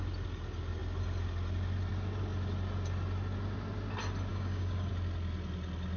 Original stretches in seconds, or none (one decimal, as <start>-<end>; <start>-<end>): 0.0-4.3; 4.9-6.0